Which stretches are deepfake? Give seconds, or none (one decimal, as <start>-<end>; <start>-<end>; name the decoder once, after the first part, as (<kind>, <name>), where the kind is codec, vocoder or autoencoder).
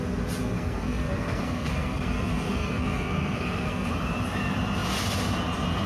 0.4-3.9 (codec, SNAC)